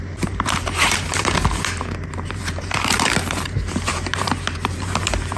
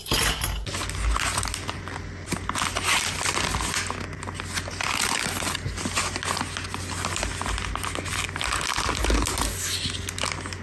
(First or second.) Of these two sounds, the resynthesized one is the first